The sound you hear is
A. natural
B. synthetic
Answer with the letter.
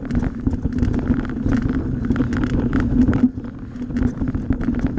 A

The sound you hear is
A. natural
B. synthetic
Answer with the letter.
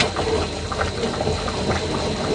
A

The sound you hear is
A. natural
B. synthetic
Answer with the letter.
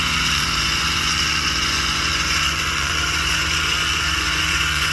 B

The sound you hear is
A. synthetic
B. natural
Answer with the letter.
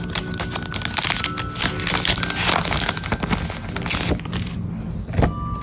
B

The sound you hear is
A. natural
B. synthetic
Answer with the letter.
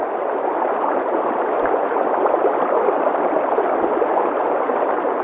A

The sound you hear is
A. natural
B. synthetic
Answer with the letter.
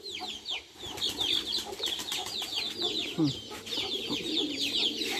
A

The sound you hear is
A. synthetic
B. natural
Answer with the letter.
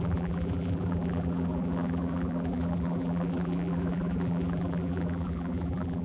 A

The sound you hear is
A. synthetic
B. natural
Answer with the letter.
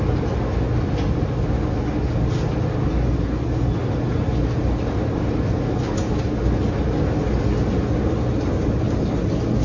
B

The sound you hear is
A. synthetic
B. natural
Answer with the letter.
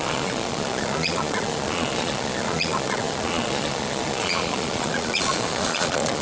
A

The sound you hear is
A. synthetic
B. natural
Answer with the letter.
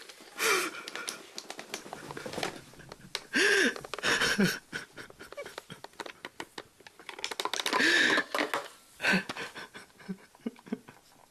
B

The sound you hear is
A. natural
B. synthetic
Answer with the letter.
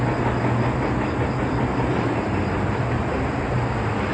A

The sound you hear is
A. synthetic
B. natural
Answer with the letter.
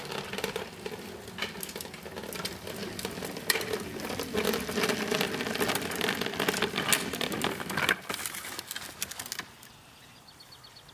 B